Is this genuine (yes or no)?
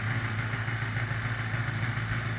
yes